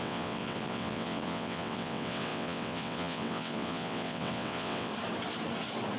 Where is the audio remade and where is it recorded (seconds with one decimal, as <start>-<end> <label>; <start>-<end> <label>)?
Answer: 0.0-4.9 remade; 4.9-6.0 recorded